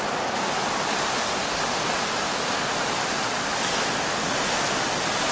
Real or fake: real